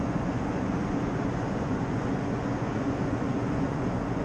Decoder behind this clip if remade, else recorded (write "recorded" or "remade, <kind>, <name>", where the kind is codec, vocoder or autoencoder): remade, vocoder, Vocos